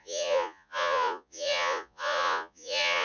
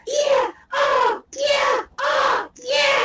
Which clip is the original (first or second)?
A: second